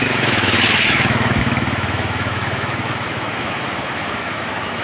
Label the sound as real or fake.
fake